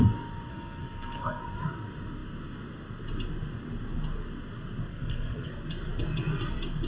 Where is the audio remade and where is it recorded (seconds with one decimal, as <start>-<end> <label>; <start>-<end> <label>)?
0.0-0.5 recorded; 0.5-1.4 remade; 1.4-4.9 recorded; 4.9-5.5 remade; 5.5-6.9 recorded